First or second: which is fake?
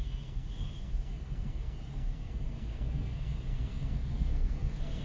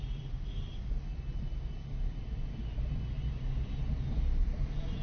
first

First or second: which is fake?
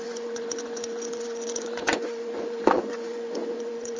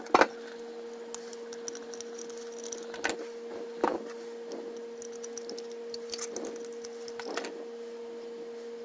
first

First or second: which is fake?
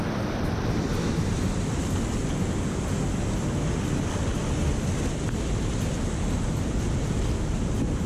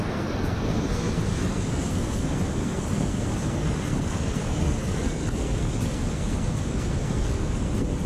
second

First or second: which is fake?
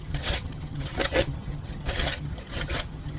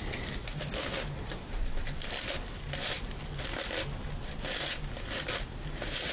first